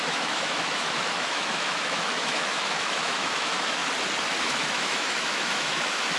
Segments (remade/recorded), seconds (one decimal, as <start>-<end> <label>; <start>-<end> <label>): 0.0-3.8 remade; 3.8-4.4 recorded; 4.4-6.2 remade

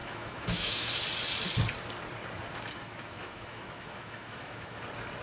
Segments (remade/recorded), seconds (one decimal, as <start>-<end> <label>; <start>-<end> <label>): 0.0-0.9 remade; 0.9-2.7 recorded; 2.7-4.8 remade; 4.8-5.2 recorded

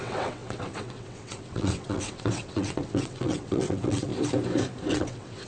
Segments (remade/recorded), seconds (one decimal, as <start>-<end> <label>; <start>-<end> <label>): 0.0-4.1 remade; 4.1-4.9 recorded; 4.9-5.5 remade

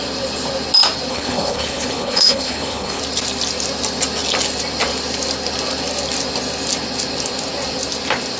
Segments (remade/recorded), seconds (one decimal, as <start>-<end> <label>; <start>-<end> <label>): 0.0-1.1 recorded; 1.1-3.0 remade; 3.0-8.4 recorded